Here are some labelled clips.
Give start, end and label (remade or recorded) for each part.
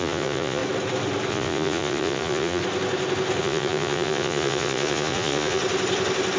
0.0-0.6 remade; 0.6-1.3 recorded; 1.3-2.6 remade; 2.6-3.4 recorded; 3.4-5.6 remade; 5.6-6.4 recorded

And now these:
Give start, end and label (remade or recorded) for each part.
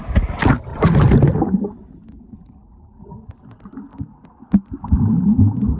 0.0-5.8 recorded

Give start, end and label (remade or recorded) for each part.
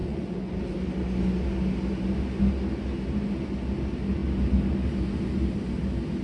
0.0-0.6 remade; 0.6-6.2 recorded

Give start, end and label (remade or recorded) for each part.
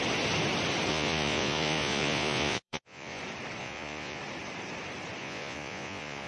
0.0-0.9 recorded; 0.9-3.2 remade; 3.2-3.6 recorded; 3.6-4.2 remade; 4.2-5.2 recorded; 5.2-6.3 remade